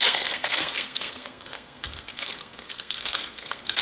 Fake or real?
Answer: fake